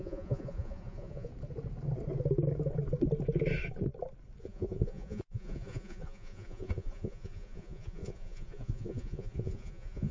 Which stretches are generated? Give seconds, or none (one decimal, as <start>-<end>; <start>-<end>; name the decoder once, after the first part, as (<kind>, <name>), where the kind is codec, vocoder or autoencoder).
0.0-1.3 (vocoder, Vocos); 4.4-10.1